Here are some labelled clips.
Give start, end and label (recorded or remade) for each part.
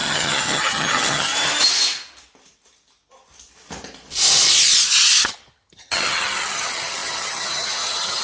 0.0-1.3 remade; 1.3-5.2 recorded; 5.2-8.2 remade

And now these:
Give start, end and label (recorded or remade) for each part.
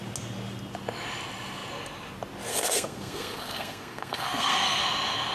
0.0-2.5 recorded; 2.5-4.8 remade; 4.8-5.3 recorded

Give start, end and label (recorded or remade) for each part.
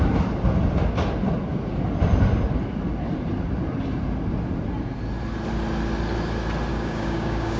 0.0-6.7 recorded; 6.7-7.6 remade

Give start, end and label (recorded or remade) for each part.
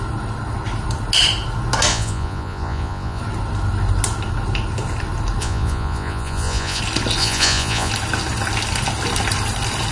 0.0-1.9 recorded; 1.9-3.2 remade; 3.2-5.4 recorded; 5.4-6.8 remade; 6.8-7.2 recorded; 7.2-7.9 remade; 7.9-9.9 recorded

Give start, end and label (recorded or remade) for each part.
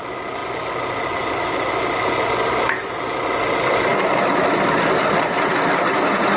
0.0-6.4 recorded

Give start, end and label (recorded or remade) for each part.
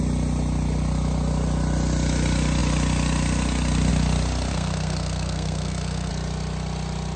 0.0-4.5 recorded; 4.5-6.1 remade; 6.1-7.2 recorded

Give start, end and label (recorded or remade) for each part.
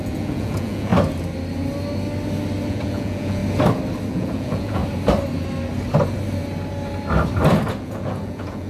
0.0-0.9 remade; 0.9-2.7 recorded; 2.7-3.4 remade; 3.4-4.1 recorded; 4.1-4.8 remade; 4.8-7.8 recorded; 7.8-8.7 remade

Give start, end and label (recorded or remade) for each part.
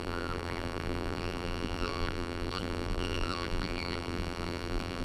0.0-5.0 remade